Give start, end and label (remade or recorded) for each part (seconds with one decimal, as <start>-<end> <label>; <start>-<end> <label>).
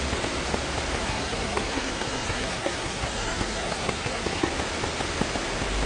0.0-1.0 recorded; 1.0-4.5 remade; 4.5-5.9 recorded